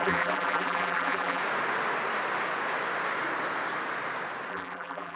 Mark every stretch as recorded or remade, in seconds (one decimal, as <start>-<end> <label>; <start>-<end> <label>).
0.0-1.4 remade; 1.4-4.5 recorded; 4.5-5.2 remade